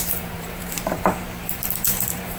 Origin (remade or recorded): remade